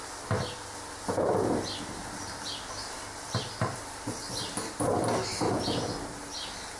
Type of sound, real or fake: real